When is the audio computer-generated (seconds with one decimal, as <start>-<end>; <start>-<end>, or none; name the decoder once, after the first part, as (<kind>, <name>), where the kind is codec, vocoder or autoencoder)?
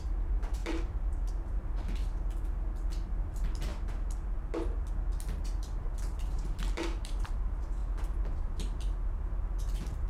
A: 0.0-2.0 (vocoder, BigVGAN v2); 3.1-3.7; 5.6-7.8; 8.8-10.1